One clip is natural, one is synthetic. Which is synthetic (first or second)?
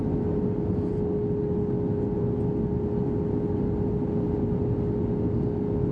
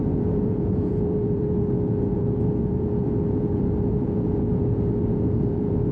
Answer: second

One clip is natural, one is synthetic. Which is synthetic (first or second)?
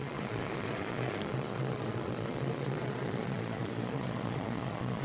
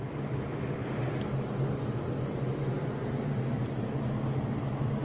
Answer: first